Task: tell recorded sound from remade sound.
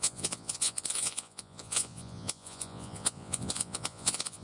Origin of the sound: remade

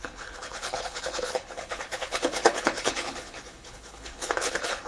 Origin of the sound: remade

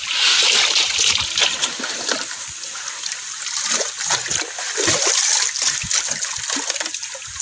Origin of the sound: recorded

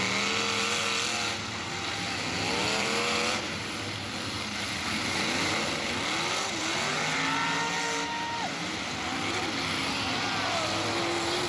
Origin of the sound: recorded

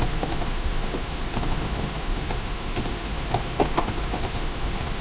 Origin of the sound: remade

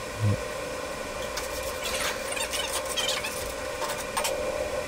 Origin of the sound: recorded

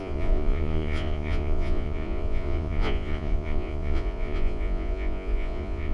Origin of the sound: remade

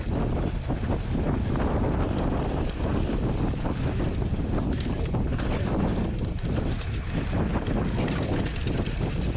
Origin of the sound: recorded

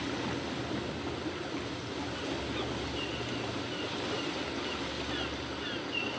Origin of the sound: recorded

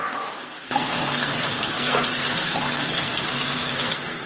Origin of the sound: remade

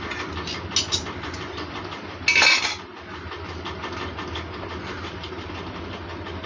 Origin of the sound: recorded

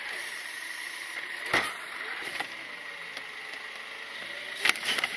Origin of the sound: recorded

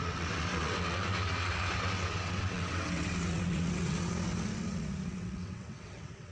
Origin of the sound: remade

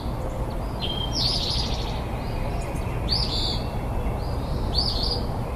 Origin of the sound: recorded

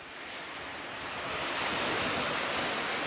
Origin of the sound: recorded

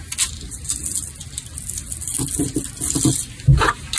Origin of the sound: recorded